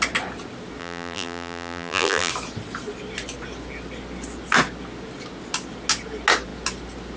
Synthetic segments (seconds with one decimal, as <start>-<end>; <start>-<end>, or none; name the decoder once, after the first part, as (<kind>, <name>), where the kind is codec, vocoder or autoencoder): 0.8-2.3 (vocoder, BigVGAN v2)